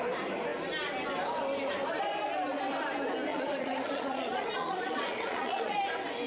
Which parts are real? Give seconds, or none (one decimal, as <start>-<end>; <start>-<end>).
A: 0.0-3.3; 5.8-6.3